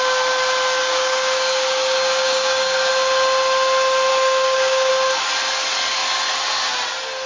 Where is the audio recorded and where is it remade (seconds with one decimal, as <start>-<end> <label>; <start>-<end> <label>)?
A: 0.0-0.8 recorded; 0.8-2.9 remade; 2.9-4.1 recorded; 4.1-4.9 remade; 4.9-7.3 recorded